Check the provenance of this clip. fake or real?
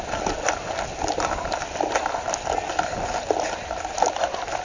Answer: real